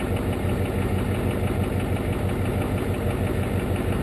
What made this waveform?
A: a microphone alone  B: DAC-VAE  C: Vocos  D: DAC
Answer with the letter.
A